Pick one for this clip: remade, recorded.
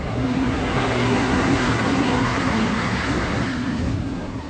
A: remade